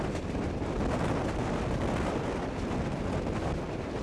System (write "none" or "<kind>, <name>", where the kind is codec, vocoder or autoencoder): none